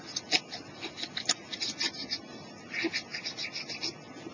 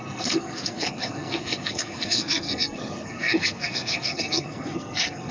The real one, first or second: first